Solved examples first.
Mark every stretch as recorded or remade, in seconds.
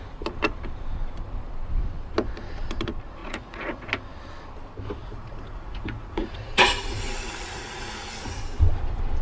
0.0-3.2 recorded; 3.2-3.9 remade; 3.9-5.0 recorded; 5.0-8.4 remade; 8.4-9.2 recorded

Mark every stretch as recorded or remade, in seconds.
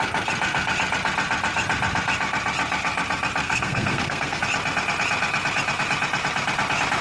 0.0-3.4 recorded; 3.4-4.4 remade; 4.4-7.0 recorded